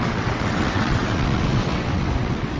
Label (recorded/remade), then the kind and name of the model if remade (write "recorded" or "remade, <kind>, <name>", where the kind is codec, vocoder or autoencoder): remade, vocoder, WaveNeXt